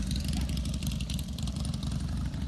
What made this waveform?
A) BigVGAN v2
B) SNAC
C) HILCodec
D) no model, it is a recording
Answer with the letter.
A